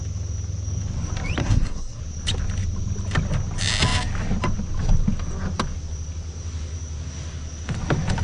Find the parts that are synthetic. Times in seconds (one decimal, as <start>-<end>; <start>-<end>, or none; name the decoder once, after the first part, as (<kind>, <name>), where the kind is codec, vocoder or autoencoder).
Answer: 1.4-2.0 (codec, SNAC)